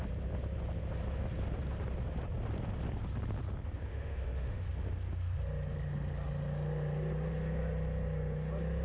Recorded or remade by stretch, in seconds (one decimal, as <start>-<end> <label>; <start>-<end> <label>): 0.0-3.9 recorded; 3.9-4.7 remade; 4.7-8.8 recorded